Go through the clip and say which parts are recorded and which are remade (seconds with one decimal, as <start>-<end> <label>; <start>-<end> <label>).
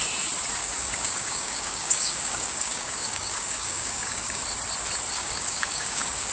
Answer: 0.0-0.6 recorded; 0.6-4.4 remade; 4.4-5.2 recorded; 5.2-6.3 remade